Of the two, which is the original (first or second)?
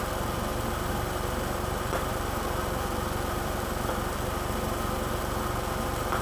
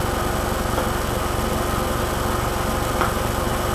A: second